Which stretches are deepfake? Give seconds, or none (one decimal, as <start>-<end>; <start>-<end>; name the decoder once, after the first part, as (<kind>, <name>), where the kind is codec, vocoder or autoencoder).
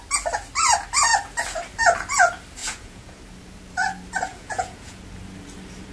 2.6-3.2 (vocoder, Vocos); 4.3-5.0